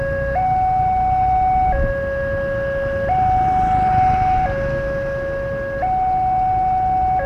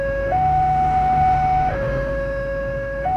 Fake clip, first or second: second